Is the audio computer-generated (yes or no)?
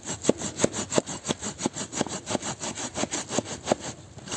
no